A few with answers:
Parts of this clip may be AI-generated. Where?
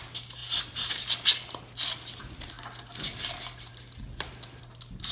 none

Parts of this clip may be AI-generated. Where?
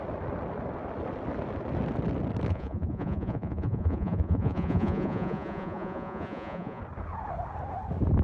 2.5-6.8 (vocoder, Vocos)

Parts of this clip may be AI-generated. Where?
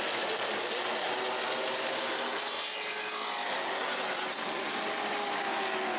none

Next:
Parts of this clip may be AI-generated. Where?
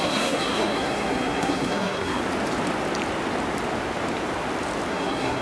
0.0-2.2 (codec, SNAC); 4.9-5.4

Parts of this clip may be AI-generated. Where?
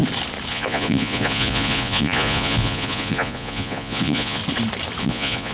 0.5-4.4 (vocoder, Vocos); 5.0-5.5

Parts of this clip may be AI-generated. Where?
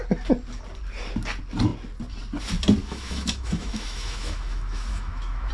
2.8-5.5 (autoencoder, DAC-VAE)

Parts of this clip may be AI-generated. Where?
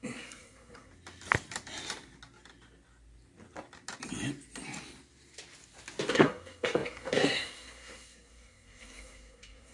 0.0-0.9 (codec, SNAC); 6.1-9.7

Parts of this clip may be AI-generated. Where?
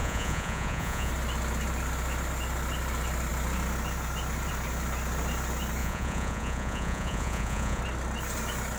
0.0-1.1 (vocoder, Vocos); 5.8-7.8